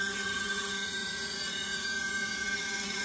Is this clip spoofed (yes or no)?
yes